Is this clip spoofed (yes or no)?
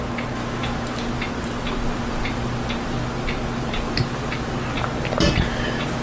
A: no